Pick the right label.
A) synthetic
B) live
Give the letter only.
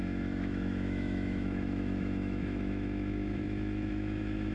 A